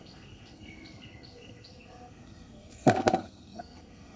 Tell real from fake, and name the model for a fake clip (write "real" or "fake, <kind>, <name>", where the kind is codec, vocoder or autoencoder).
fake, codec, SNAC